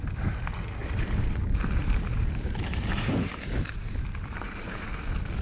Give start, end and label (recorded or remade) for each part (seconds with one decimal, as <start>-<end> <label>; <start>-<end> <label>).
0.0-0.8 recorded; 0.8-1.4 remade; 1.4-1.8 recorded; 1.8-5.0 remade; 5.0-5.4 recorded